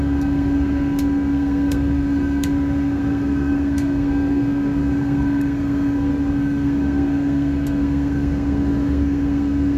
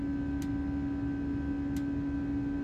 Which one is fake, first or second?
first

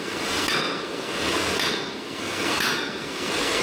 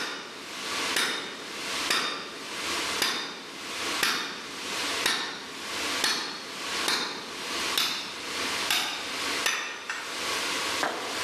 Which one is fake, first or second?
first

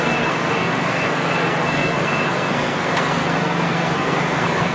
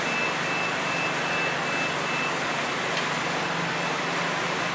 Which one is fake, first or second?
first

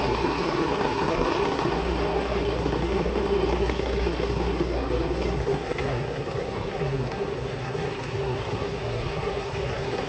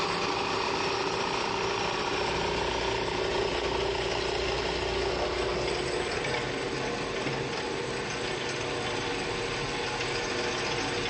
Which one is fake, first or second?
first